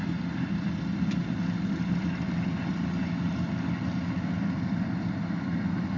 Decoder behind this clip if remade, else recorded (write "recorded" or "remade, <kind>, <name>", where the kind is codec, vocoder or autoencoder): recorded